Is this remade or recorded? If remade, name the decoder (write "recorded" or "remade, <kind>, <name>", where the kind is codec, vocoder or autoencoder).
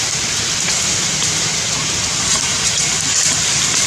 recorded